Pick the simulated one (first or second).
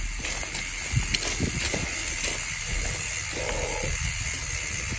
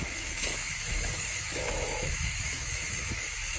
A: second